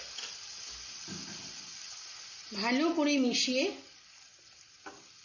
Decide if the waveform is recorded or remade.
recorded